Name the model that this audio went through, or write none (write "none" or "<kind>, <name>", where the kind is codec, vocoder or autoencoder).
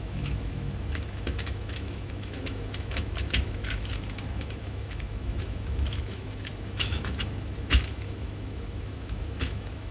autoencoder, DAC-VAE